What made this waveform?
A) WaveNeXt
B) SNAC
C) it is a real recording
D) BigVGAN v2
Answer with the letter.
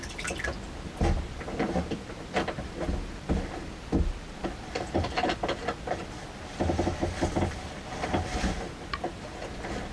C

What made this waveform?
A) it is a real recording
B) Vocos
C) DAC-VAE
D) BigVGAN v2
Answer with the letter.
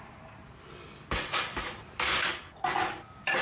A